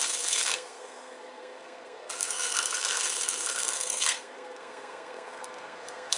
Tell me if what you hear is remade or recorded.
remade